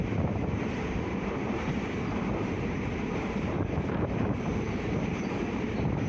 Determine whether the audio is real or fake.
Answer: fake